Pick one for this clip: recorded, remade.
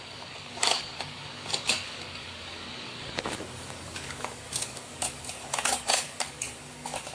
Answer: remade